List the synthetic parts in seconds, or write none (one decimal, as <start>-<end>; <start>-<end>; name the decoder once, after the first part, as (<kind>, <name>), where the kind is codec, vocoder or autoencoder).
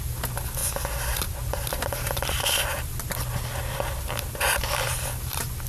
none